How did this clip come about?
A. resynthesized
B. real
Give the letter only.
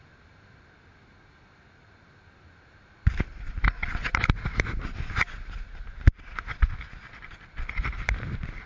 B